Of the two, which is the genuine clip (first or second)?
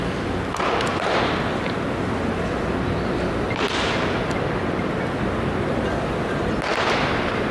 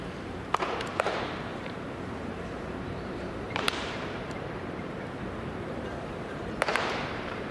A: first